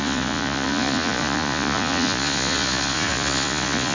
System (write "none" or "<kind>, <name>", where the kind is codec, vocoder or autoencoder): vocoder, Vocos